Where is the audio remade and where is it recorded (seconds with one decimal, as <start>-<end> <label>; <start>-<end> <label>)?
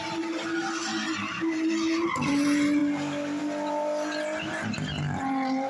0.0-5.7 recorded